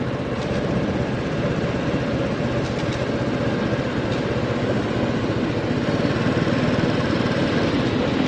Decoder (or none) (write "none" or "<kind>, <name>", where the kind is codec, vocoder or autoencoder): none